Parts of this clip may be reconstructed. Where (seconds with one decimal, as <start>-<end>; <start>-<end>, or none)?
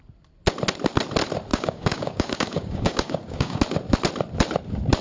1.5-3.6